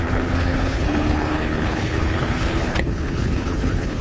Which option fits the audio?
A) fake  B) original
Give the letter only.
A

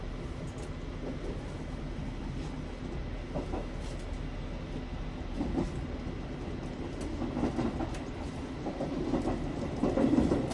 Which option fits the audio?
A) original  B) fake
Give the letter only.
A